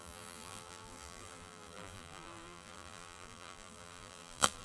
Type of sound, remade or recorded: remade